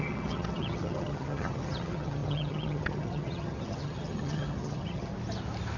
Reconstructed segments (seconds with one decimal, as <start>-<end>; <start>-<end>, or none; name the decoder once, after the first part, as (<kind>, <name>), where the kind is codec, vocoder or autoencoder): 0.0-5.1 (vocoder, HiFi-GAN)